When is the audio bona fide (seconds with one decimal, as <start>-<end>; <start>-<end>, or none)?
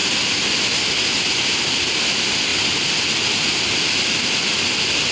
0.0-5.1